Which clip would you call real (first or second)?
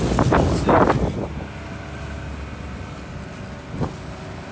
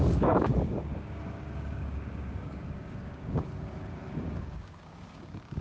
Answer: first